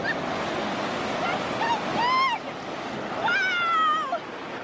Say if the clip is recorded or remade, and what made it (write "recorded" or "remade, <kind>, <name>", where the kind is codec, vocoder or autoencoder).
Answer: recorded